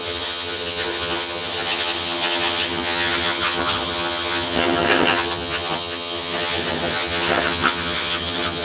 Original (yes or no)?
no